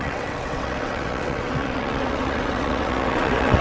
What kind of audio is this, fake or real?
fake